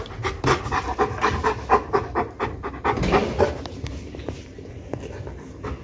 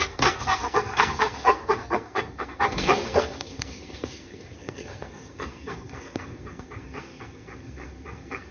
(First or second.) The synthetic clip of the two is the second